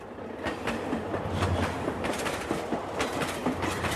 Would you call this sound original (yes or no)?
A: no